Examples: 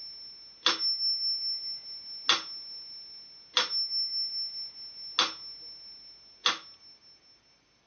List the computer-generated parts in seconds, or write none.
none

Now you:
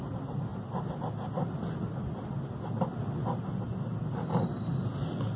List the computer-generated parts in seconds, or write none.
none